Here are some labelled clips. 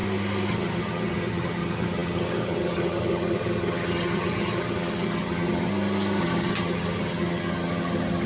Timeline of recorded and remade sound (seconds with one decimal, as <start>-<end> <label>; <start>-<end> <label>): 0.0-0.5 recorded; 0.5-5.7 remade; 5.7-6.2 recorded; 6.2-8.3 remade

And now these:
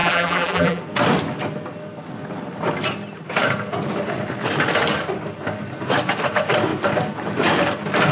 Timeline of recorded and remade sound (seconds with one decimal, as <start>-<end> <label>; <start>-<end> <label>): 0.0-0.8 remade; 0.8-8.1 recorded

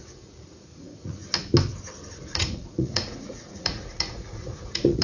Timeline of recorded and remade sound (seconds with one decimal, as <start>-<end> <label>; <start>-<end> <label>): 0.0-1.2 remade; 1.2-2.1 recorded; 2.1-5.0 remade

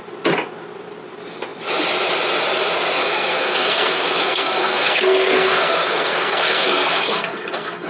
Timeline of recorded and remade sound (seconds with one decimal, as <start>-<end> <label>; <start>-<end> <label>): 0.0-3.0 recorded; 3.0-7.9 remade

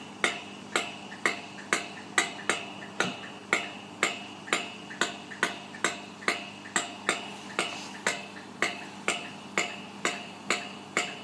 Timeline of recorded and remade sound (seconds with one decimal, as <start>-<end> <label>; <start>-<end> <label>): 0.0-11.2 recorded

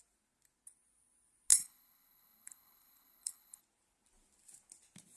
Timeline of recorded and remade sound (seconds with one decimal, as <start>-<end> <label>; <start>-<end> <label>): 0.0-1.5 recorded; 1.5-3.6 remade; 3.6-5.2 recorded

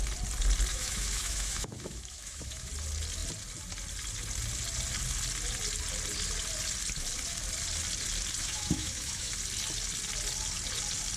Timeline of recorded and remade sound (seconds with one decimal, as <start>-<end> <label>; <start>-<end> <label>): 0.0-0.7 recorded; 0.7-2.7 remade; 2.7-8.4 recorded; 8.4-9.3 remade; 9.3-11.2 recorded